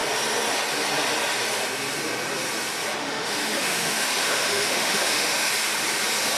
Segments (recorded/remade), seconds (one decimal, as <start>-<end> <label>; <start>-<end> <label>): 0.0-3.0 recorded; 3.0-5.5 remade; 5.5-6.4 recorded